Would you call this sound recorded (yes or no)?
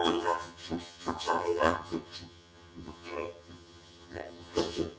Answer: no